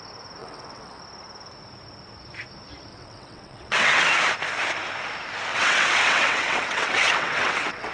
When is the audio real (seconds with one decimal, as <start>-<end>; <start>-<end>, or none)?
0.0-0.4; 1.0-2.9; 4.0-5.5